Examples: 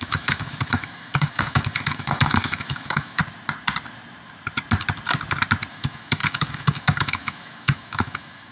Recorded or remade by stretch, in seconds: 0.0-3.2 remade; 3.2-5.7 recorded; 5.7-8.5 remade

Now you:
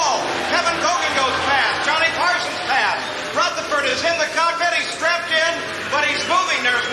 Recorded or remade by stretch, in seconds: 0.0-3.9 recorded; 3.9-4.6 remade; 4.6-6.9 recorded

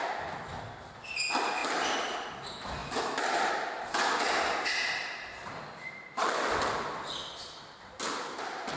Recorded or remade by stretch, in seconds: 0.0-8.8 recorded

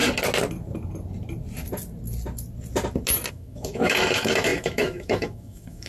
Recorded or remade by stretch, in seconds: 0.0-3.3 recorded; 3.3-5.9 remade